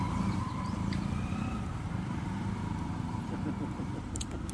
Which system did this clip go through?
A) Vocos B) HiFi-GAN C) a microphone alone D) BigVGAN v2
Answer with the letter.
D